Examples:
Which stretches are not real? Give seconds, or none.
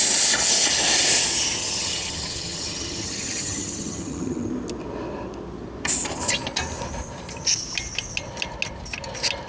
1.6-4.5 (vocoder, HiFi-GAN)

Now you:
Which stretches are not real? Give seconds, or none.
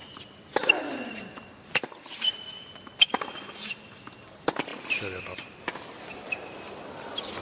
none